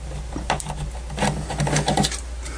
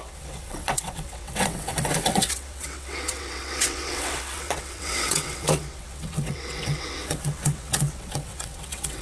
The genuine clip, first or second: first